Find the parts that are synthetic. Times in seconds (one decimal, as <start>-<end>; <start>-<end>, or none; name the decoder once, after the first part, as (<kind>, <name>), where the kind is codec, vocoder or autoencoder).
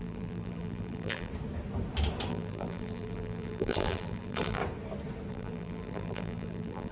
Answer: 0.0-1.3 (vocoder, BigVGAN v2); 2.3-4.6; 5.3-6.9